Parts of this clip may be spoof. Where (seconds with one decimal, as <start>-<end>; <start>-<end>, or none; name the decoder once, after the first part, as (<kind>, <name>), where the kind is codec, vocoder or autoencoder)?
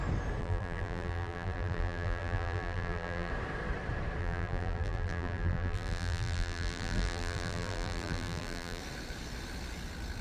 0.4-3.3 (vocoder, BigVGAN v2); 4.2-8.8